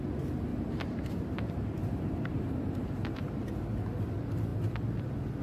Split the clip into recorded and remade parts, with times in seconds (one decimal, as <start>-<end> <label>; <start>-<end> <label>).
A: 0.0-0.5 recorded; 0.5-3.0 remade; 3.0-5.4 recorded